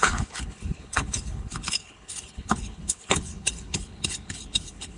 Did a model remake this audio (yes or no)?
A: yes